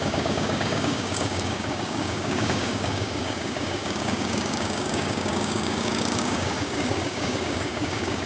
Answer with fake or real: fake